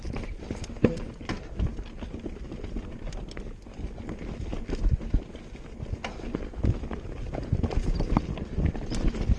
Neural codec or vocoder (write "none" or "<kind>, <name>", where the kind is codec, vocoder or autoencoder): none